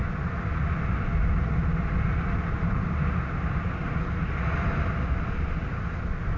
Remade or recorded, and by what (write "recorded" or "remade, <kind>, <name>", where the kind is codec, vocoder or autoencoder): recorded